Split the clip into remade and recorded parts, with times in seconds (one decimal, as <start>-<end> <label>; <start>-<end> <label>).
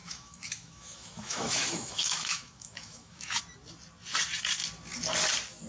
0.0-3.4 remade; 3.4-5.7 recorded